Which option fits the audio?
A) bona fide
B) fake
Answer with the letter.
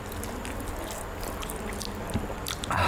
A